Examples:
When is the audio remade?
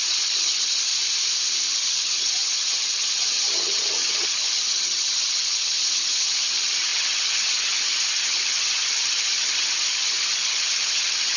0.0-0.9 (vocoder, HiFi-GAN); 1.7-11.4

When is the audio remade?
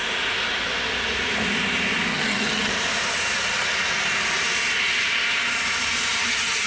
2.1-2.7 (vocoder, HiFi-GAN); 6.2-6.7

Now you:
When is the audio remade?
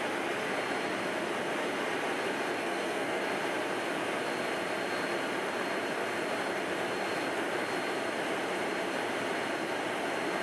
2.6-3.2 (codec, SNAC)